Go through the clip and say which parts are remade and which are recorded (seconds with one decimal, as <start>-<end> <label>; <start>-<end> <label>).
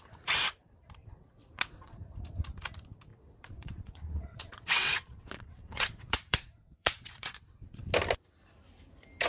0.0-1.0 recorded; 1.0-2.0 remade; 2.0-3.1 recorded; 3.1-7.9 remade; 7.9-9.3 recorded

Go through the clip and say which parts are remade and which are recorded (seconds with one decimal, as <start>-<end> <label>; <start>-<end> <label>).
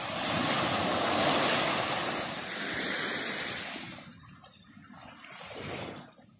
0.0-6.4 recorded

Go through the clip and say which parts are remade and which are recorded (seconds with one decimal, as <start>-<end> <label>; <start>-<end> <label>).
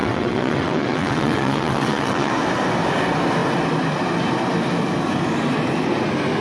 0.0-2.3 remade; 2.3-6.4 recorded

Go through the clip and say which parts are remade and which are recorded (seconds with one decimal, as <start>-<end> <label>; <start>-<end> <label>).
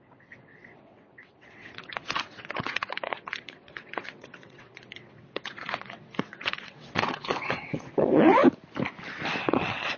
0.0-8.4 remade; 8.4-9.4 recorded; 9.4-10.0 remade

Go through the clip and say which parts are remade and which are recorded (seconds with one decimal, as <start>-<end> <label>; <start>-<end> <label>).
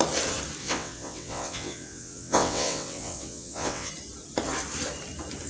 0.0-0.6 recorded; 0.6-3.9 remade; 3.9-5.5 recorded